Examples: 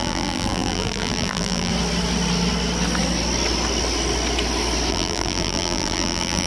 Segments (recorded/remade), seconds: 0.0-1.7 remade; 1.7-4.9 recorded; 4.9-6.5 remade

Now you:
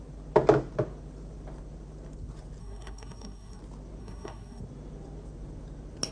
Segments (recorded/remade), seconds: 0.0-2.6 recorded; 2.6-3.6 remade; 3.6-4.0 recorded; 4.0-4.6 remade; 4.6-6.1 recorded

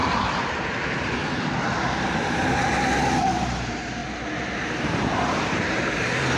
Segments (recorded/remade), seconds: 0.0-0.5 recorded; 0.5-1.2 remade; 1.2-3.2 recorded; 3.2-4.0 remade; 4.0-4.7 recorded; 4.7-6.4 remade